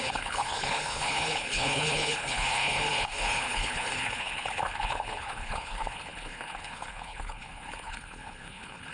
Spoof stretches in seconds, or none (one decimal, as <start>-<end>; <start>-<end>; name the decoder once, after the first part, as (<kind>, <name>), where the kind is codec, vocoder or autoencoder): 0.0-8.9 (codec, HILCodec)